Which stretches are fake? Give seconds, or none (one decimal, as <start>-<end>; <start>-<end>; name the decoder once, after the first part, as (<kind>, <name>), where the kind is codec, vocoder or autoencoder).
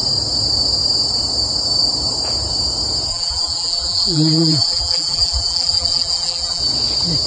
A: 3.1-6.6 (vocoder, BigVGAN v2)